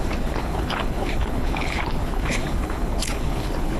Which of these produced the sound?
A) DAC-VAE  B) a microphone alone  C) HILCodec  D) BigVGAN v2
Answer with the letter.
C